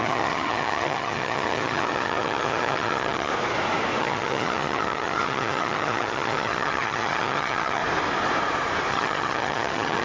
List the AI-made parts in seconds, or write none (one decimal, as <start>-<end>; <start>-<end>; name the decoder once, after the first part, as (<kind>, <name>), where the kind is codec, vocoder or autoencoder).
0.0-3.3 (vocoder, HiFi-GAN); 4.0-7.8; 8.9-10.0